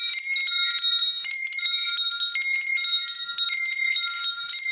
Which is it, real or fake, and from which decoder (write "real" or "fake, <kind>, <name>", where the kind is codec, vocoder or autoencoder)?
real